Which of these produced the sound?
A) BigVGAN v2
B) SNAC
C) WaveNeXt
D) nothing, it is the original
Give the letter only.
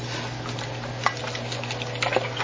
D